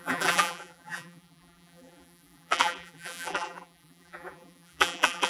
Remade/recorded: remade